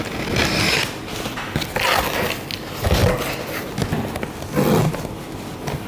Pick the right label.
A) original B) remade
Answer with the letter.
A